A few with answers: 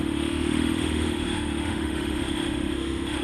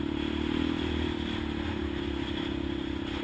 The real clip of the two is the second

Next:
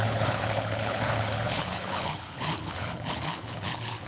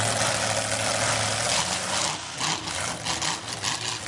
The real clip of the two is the second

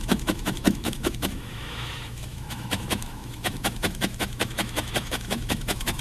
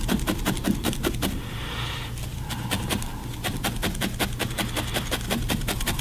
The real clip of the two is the second